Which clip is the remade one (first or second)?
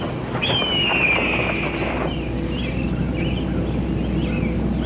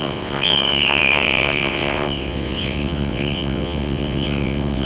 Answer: second